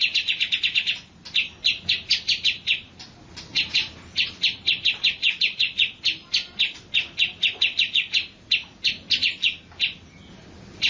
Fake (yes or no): no